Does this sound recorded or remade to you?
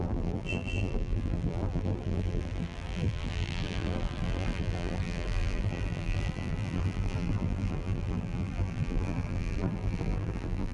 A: remade